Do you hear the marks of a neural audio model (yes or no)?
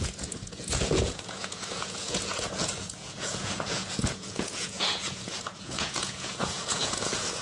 yes